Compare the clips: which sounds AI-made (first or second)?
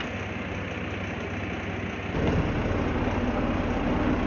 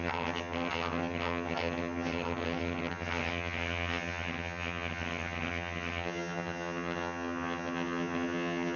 second